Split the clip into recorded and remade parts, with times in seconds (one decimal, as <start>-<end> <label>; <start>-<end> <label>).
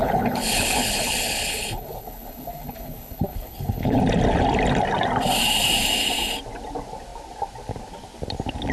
0.0-4.0 remade; 4.0-8.7 recorded